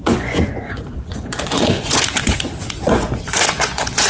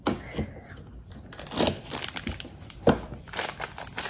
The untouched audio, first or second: second